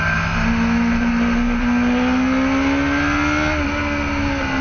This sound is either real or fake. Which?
real